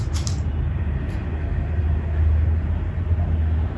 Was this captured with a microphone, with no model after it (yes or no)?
yes